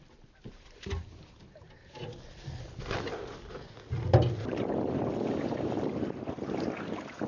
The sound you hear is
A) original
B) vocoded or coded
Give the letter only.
A